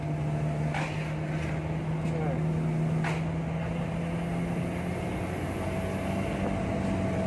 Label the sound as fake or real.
real